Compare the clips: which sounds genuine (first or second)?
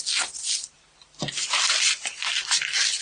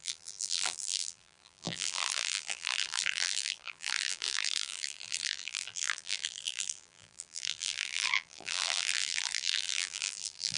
first